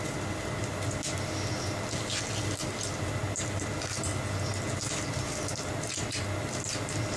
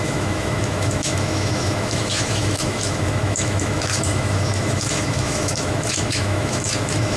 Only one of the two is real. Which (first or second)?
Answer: first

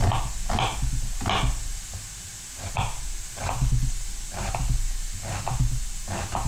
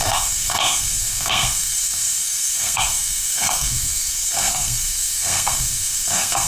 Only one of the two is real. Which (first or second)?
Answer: first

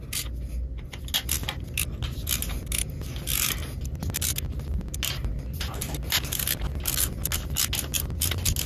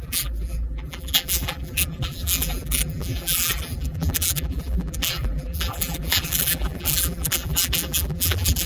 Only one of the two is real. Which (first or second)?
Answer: first